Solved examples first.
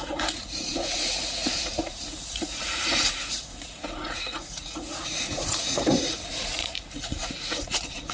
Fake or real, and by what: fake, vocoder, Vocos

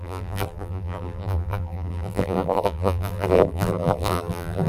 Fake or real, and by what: fake, vocoder, BigVGAN v2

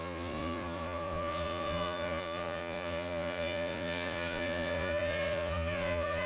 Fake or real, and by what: fake, vocoder, Vocos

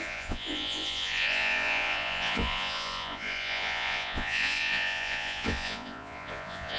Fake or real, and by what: fake, vocoder, Vocos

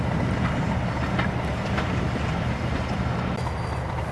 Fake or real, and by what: real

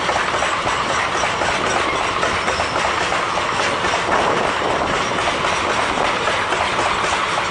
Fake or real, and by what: real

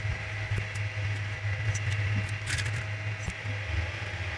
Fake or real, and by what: real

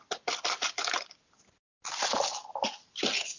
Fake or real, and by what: real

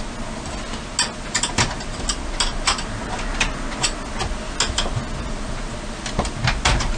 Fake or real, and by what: real